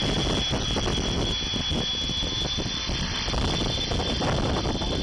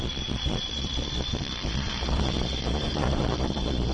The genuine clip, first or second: first